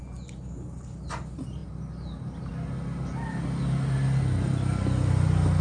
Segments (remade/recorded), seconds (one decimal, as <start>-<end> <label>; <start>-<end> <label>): 0.0-5.6 recorded